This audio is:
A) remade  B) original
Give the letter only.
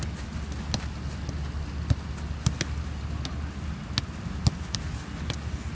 B